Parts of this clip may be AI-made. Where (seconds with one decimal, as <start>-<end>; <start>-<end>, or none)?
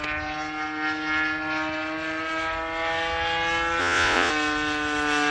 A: 3.8-4.3